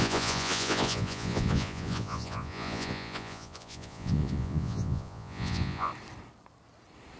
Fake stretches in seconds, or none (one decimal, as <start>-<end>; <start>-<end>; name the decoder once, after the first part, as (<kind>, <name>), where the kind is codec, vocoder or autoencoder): 0.0-5.9 (vocoder, Vocos)